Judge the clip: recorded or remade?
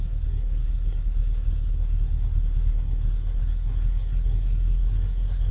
remade